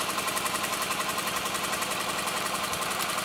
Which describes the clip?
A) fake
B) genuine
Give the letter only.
A